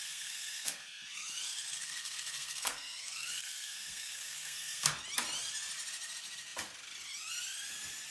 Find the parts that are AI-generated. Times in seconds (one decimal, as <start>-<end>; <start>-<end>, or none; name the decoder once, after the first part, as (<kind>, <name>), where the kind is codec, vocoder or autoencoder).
0.0-4.9 (codec, SNAC)

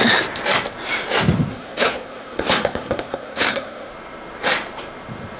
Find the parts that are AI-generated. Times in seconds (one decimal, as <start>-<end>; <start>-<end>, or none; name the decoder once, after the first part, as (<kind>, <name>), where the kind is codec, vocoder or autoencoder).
1.5-3.9 (codec, SNAC)

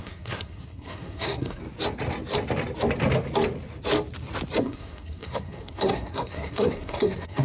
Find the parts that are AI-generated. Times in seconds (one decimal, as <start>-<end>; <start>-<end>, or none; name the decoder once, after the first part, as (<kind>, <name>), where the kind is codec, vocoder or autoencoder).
0.0-1.6 (codec, SNAC); 4.6-7.4

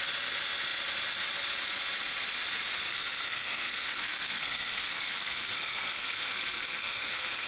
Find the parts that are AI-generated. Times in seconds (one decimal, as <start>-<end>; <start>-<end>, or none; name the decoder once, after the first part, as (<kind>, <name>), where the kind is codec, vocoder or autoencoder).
2.9-7.5 (codec, SNAC)

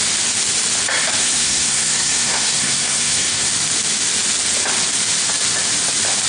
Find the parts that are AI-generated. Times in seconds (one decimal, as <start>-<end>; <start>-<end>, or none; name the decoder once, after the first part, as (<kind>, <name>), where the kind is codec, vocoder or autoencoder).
1.2-3.5 (codec, SNAC)

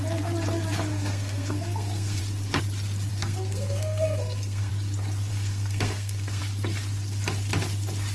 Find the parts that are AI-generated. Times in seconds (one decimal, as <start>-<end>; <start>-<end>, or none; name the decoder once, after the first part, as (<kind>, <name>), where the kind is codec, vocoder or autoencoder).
0.9-2.2 (codec, SNAC); 3.1-4.7; 5.3-6.4

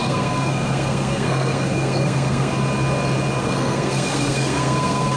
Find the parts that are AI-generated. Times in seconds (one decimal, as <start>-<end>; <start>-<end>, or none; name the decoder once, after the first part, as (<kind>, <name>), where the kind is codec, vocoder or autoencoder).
0.0-2.5 (codec, SNAC); 3.4-5.2

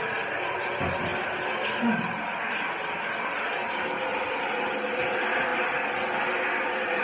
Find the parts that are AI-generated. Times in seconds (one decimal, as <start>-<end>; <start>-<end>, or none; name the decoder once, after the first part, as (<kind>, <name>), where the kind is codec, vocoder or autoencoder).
none